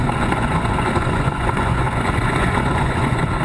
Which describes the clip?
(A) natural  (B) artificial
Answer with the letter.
B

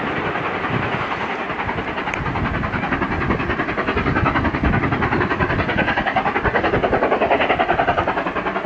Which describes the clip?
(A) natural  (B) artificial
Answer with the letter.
A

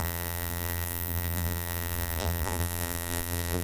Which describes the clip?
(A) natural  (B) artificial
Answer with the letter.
B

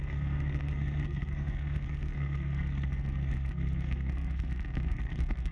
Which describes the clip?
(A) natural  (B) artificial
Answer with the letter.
B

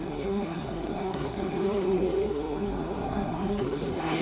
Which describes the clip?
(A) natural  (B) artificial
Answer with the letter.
B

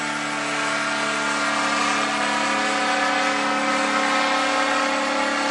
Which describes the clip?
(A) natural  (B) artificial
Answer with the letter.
A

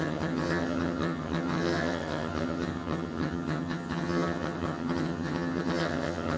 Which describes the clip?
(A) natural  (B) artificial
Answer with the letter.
B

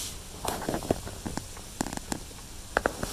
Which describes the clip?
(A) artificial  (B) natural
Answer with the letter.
B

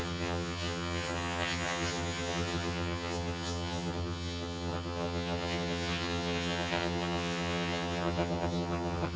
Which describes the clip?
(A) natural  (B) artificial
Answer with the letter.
B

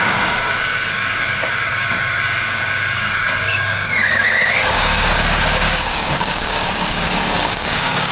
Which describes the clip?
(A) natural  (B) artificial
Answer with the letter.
B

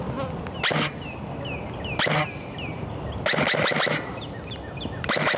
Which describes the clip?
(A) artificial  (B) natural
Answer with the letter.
B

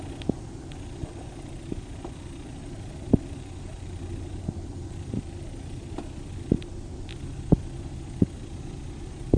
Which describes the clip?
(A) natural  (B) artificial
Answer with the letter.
A